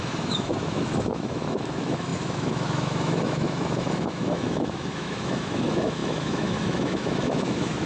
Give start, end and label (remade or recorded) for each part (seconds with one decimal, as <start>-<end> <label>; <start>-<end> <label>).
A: 0.0-7.9 remade